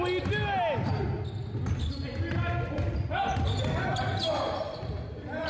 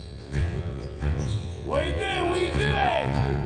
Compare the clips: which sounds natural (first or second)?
first